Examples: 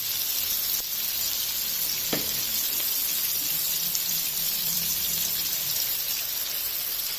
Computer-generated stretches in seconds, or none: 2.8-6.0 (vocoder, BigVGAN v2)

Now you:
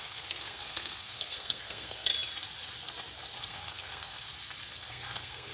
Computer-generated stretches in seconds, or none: 0.0-2.1 (codec, SNAC); 3.4-4.3; 4.9-5.5

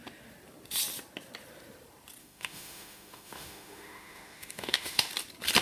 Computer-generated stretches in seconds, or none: 2.2-5.1 (autoencoder, DAC-VAE)